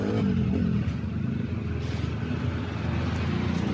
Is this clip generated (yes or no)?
no